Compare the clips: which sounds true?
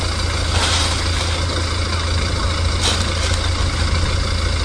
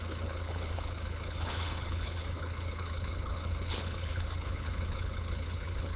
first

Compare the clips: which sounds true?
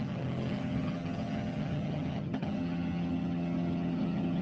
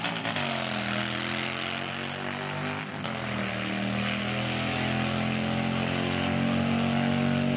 second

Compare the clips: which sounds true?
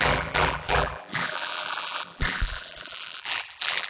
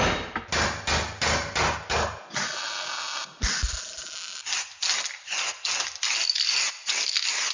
second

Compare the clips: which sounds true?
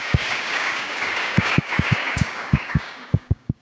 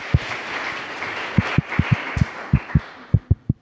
second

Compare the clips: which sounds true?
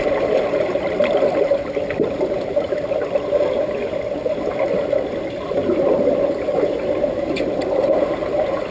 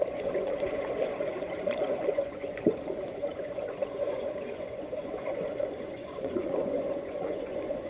first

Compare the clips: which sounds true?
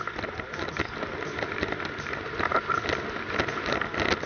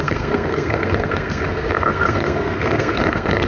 first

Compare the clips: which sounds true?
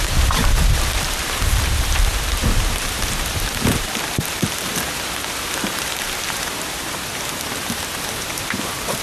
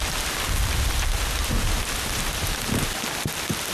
second